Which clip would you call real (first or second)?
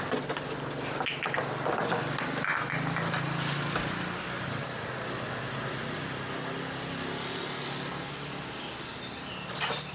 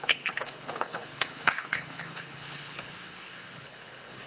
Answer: first